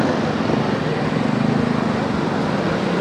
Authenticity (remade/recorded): recorded